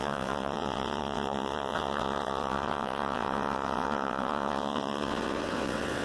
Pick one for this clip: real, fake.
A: fake